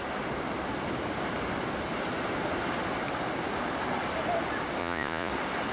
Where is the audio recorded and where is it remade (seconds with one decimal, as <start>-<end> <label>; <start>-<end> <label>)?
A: 0.0-4.8 recorded; 4.8-5.3 remade; 5.3-5.7 recorded